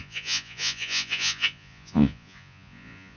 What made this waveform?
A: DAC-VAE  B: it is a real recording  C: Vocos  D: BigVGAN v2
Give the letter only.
C